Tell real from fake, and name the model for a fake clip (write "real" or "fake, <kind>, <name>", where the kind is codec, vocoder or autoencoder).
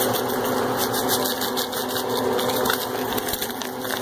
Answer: real